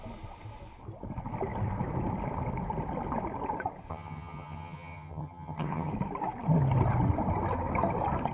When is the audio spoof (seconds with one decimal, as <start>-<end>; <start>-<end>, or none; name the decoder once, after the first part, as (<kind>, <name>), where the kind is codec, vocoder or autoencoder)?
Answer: 3.9-5.9 (vocoder, HiFi-GAN)